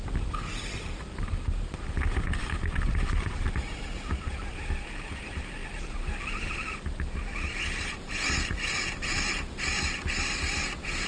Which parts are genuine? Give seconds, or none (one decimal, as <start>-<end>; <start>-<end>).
1.1-2.4; 5.6-7.9